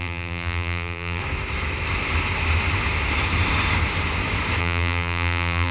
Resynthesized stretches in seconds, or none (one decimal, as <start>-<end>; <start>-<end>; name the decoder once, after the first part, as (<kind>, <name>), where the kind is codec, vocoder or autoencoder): 0.0-1.2 (vocoder, BigVGAN v2); 4.6-5.7

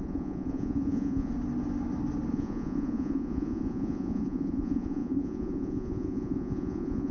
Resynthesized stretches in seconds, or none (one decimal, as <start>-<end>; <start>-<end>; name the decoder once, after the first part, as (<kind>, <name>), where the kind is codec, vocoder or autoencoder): 0.0-1.3 (vocoder, Vocos); 2.3-7.1

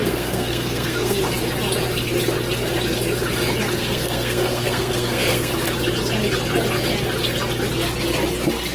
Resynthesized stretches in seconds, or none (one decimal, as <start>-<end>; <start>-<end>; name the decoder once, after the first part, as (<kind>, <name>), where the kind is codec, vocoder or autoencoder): 0.0-1.2 (codec, SNAC); 3.8-5.5

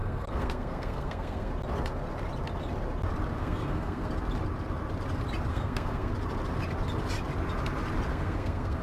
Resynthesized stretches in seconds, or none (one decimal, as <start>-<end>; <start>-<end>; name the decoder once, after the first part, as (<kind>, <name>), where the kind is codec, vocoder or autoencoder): 0.0-1.5 (codec, SNAC); 3.4-4.1; 5.5-6.1; 8.1-8.8

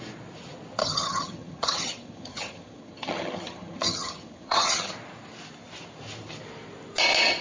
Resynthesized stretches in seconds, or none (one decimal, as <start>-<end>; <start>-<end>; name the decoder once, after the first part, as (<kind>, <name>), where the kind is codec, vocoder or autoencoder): 0.8-4.9 (vocoder, HiFi-GAN)

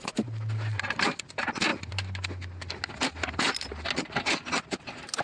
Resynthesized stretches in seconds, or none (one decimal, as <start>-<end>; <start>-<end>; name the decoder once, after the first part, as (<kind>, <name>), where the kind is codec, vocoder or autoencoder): none

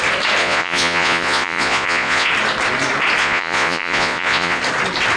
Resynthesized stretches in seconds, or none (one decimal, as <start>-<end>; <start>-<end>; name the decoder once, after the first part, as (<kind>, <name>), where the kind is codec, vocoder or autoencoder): 0.4-2.3 (vocoder, Vocos); 3.2-4.6

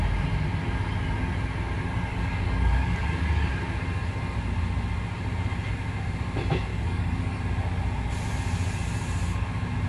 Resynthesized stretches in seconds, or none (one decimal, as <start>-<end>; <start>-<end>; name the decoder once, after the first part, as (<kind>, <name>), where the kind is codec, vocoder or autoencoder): 2.1-3.5 (codec, DAC); 6.7-7.4